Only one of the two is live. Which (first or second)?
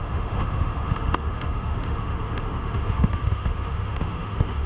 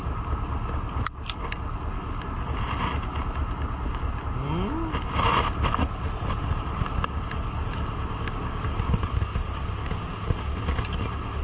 second